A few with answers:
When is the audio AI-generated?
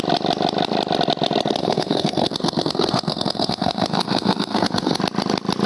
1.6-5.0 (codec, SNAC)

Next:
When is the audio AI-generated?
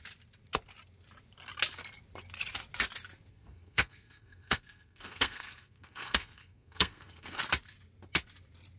3.3-7.4 (codec, SNAC)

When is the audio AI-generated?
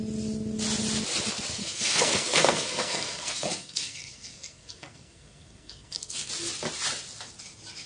1.6-6.3 (codec, SNAC)